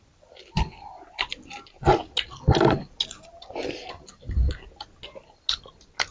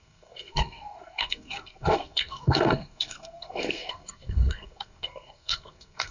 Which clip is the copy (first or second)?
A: second